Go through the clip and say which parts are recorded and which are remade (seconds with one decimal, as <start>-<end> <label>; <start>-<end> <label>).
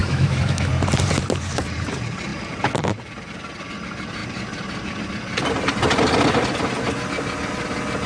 0.0-0.7 remade; 0.7-8.1 recorded